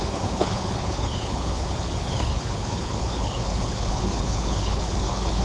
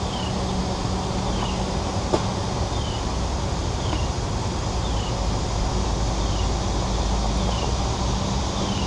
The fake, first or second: first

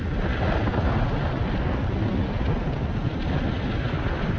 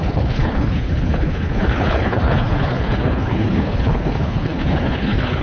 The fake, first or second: second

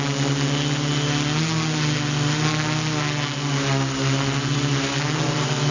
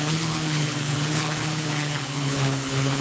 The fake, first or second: second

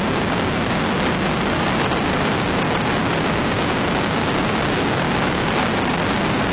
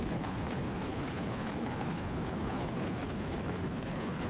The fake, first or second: second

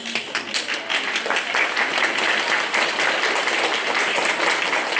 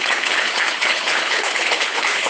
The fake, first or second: second